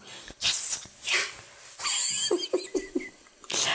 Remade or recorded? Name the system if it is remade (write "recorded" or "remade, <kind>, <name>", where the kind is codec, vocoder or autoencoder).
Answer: recorded